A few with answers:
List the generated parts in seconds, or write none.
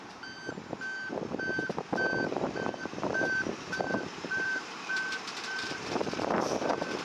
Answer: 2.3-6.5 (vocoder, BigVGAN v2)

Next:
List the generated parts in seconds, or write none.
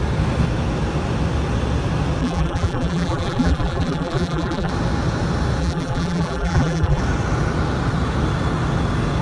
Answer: 2.2-4.7 (vocoder, BigVGAN v2); 5.6-7.0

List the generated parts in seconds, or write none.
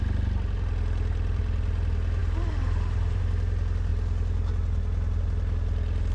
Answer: 2.2-3.2 (vocoder, BigVGAN v2)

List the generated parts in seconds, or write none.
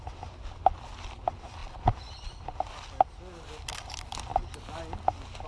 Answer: 4.3-4.8 (vocoder, BigVGAN v2)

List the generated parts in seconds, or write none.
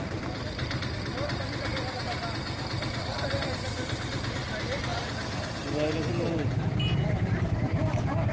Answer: 0.0-4.9 (vocoder, BigVGAN v2); 6.9-8.3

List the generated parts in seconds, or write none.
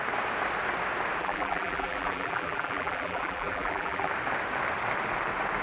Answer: 1.2-4.1 (vocoder, BigVGAN v2)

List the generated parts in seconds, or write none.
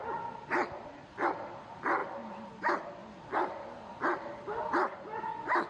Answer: none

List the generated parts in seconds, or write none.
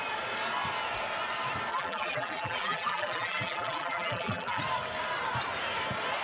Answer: 1.7-4.6 (vocoder, BigVGAN v2)